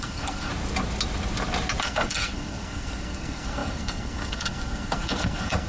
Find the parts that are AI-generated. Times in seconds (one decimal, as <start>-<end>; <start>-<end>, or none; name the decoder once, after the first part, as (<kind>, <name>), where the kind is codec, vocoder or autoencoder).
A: 0.0-0.5 (codec, SNAC); 1.8-5.7